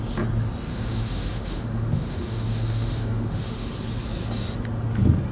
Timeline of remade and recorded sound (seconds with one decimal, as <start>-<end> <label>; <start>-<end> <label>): 0.0-0.7 recorded; 0.7-3.7 remade; 3.7-5.3 recorded